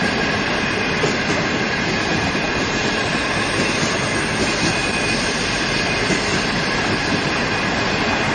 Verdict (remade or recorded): recorded